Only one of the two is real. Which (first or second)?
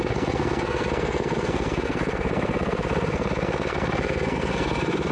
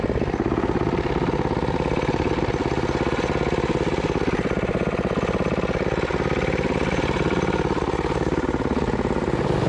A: second